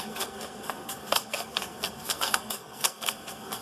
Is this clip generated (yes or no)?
yes